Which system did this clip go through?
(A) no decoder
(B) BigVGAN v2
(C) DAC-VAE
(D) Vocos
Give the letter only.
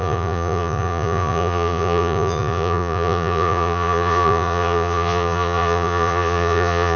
D